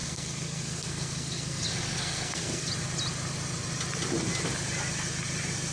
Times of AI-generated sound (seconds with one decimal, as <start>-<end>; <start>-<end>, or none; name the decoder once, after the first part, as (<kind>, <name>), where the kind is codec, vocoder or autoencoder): 0.0-2.7 (codec, SNAC)